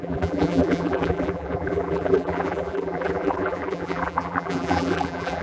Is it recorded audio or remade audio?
remade